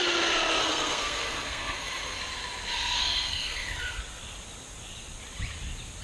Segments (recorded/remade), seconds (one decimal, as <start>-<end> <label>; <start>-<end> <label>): 0.0-0.6 recorded; 0.6-2.2 remade; 2.2-2.7 recorded; 2.7-4.0 remade; 4.0-6.0 recorded